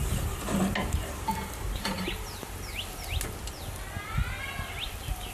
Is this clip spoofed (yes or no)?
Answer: no